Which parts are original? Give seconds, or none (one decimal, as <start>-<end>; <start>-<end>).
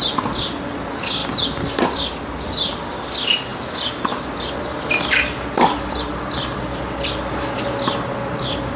0.0-1.2; 2.2-3.5; 4.5-8.8